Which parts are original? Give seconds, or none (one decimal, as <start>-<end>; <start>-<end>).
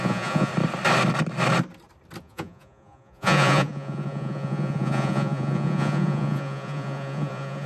0.5-2.2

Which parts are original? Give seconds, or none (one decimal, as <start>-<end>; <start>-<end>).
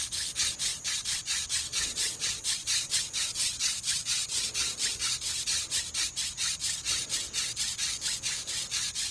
0.0-0.7; 1.2-1.7; 5.0-9.1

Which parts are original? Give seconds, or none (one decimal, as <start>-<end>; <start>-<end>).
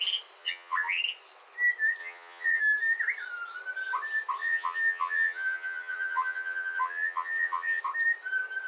0.0-0.4; 1.0-2.0; 2.6-4.4; 7.8-8.7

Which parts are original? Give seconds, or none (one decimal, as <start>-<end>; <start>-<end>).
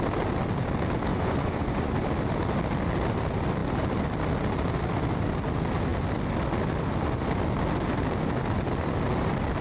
0.0-1.1; 1.9-9.6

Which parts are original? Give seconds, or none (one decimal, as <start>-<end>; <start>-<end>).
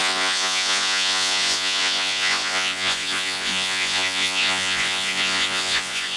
none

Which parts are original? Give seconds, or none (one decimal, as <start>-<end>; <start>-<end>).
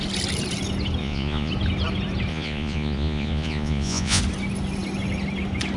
0.0-1.0; 1.5-2.3; 4.2-5.8